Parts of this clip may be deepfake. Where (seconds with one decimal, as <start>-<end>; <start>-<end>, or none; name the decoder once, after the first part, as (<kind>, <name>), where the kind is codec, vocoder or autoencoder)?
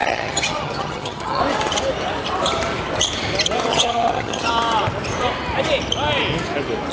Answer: 0.0-1.4 (vocoder, HiFi-GAN); 3.7-4.5